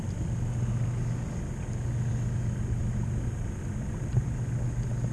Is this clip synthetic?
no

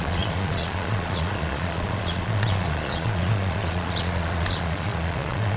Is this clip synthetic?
yes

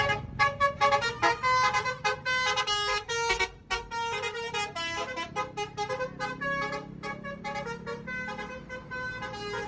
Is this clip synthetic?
no